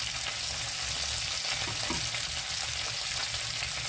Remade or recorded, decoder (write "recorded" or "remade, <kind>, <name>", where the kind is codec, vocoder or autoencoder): recorded